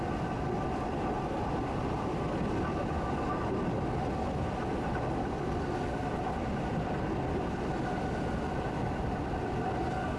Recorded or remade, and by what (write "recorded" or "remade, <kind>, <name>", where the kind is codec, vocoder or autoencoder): recorded